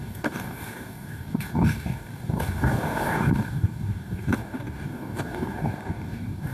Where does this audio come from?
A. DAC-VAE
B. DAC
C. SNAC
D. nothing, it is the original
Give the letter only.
B